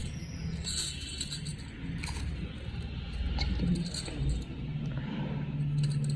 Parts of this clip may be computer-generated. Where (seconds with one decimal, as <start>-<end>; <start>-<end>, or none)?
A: 0.0-1.1